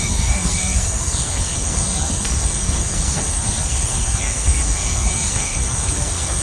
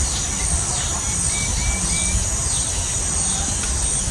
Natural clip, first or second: second